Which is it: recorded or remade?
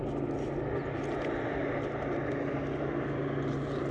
recorded